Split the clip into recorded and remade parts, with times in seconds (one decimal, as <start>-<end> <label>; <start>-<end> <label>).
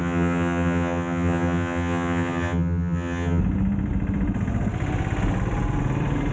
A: 0.0-3.4 remade; 3.4-6.3 recorded